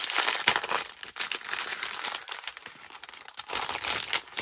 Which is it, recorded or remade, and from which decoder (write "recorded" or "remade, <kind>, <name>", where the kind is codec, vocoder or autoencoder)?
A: recorded